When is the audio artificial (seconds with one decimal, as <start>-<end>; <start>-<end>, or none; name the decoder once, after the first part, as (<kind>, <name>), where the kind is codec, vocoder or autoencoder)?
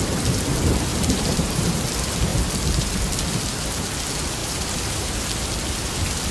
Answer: 0.9-1.8 (vocoder, BigVGAN v2); 4.4-5.2